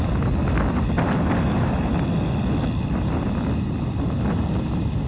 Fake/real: real